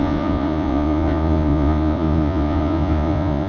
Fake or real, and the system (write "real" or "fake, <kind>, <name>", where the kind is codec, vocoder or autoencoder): fake, vocoder, Vocos